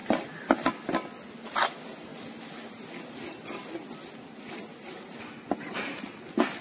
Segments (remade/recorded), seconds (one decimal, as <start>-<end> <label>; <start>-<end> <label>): 0.0-6.6 recorded